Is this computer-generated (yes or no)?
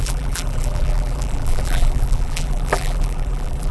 yes